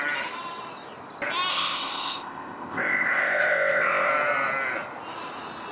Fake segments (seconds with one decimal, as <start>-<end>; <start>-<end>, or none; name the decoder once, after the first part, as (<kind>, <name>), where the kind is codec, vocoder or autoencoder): 1.5-4.1 (codec, ZipCodec)